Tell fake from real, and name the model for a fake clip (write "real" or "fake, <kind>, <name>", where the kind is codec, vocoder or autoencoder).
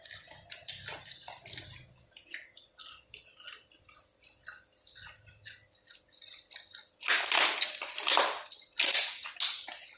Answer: real